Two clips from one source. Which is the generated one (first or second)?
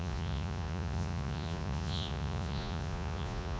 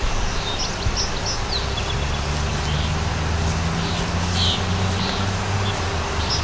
first